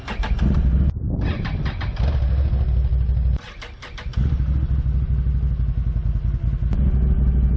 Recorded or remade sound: recorded